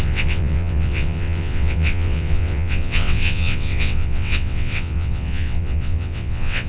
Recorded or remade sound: remade